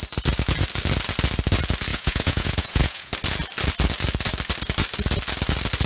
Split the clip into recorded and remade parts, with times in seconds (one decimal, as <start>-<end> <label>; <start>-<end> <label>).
0.0-1.9 recorded; 1.9-3.1 remade; 3.1-5.9 recorded